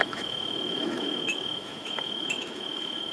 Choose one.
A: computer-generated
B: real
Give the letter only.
A